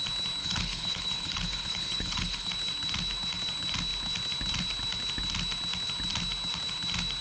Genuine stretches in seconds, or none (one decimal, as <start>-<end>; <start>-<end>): 0.0-0.4; 2.5-7.2